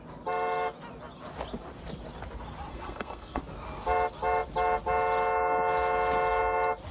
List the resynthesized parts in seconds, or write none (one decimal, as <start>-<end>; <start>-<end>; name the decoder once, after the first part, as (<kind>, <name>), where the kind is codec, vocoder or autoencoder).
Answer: 2.7-3.4 (codec, SNAC)